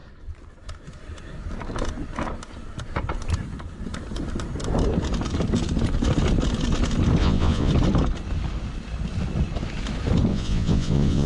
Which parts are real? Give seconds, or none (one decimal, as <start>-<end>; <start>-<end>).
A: 0.0-7.2; 7.7-10.3